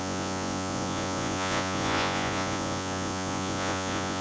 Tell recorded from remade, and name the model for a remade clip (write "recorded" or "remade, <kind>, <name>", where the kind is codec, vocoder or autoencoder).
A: remade, vocoder, Vocos